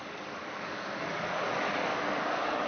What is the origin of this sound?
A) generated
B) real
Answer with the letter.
A